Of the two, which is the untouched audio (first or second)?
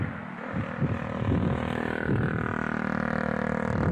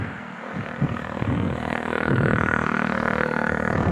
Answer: first